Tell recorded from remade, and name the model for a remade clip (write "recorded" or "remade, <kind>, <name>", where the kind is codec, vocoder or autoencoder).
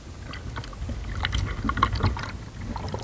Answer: recorded